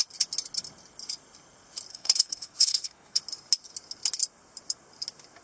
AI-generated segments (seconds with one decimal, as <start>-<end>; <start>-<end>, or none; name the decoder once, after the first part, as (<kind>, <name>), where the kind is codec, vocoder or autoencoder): 1.9-3.2 (codec, SNAC)